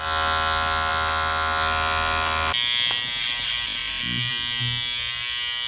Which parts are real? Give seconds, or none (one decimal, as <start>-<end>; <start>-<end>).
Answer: 0.0-5.7